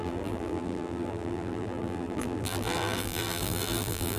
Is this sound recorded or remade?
remade